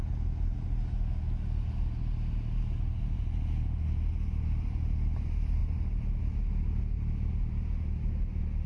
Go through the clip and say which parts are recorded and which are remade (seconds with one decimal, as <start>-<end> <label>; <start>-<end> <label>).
0.0-8.7 recorded